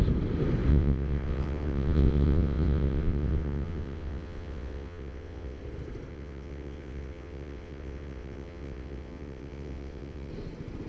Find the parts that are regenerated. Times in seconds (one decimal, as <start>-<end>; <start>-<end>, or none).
0.7-5.6; 6.1-10.3